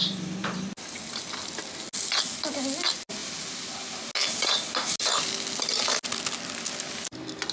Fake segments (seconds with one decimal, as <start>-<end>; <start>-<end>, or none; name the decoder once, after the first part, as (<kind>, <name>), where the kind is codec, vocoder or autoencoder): none